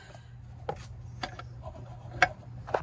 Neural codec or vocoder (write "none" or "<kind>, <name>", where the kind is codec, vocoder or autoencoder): none